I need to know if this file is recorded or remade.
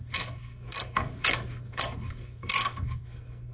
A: remade